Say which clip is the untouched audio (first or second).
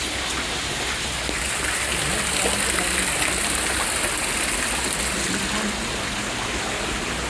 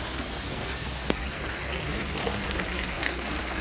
first